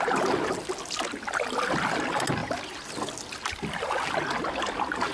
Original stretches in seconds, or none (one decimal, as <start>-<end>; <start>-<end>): 0.0-5.1